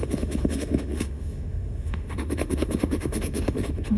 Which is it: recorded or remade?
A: remade